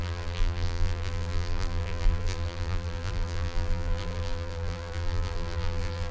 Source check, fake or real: fake